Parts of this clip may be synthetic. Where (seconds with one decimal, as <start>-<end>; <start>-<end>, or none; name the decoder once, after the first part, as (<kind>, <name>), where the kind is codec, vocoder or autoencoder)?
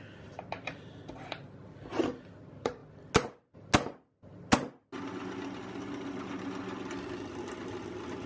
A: none